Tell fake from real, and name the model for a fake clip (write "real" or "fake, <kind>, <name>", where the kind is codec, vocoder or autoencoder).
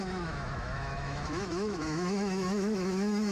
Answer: fake, autoencoder, DAC-VAE